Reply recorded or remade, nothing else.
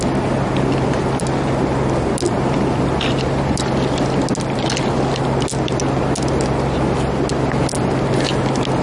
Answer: recorded